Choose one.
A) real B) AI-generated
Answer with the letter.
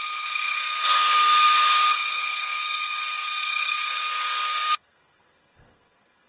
B